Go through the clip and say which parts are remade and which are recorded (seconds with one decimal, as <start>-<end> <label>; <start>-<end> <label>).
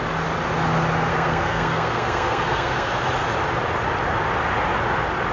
0.0-1.1 recorded; 1.1-2.9 remade; 2.9-5.3 recorded